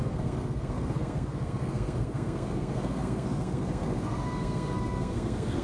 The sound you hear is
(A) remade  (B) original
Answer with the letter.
A